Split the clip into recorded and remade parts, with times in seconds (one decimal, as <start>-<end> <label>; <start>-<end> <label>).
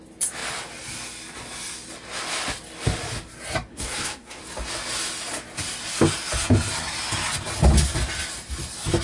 0.0-3.7 recorded; 3.7-4.4 remade; 4.4-9.0 recorded